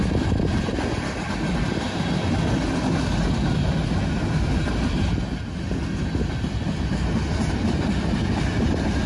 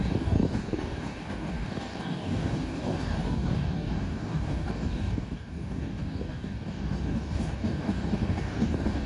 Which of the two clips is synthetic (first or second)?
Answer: second